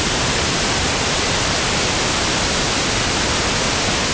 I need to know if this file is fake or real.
real